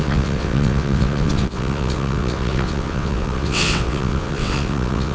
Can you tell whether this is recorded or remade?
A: remade